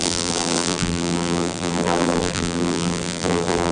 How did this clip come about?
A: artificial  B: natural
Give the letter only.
A